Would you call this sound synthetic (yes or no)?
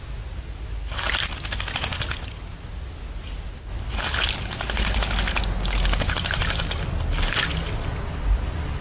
no